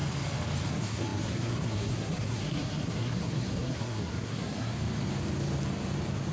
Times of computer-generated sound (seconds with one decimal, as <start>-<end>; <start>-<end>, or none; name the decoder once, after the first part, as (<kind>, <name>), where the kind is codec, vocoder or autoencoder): 0.7-4.7 (codec, SNAC)